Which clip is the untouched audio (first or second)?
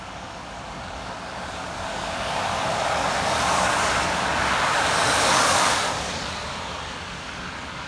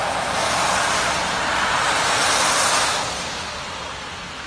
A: second